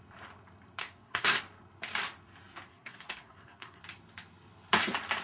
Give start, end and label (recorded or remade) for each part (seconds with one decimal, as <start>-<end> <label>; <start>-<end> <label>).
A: 0.0-0.8 recorded; 0.8-1.4 remade; 1.4-2.7 recorded; 2.7-3.8 remade; 3.8-5.2 recorded

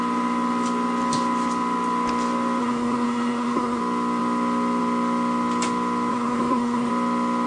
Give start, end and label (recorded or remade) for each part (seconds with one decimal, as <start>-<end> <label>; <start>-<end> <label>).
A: 0.0-2.6 recorded; 2.6-3.8 remade; 3.8-6.1 recorded; 6.1-6.9 remade; 6.9-7.5 recorded